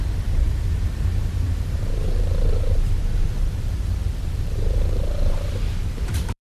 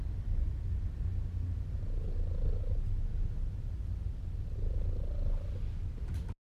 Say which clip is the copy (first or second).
first